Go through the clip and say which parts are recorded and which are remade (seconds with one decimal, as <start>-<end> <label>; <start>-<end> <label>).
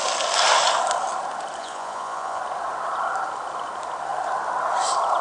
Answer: 0.0-1.6 recorded; 1.6-2.4 remade; 2.4-5.2 recorded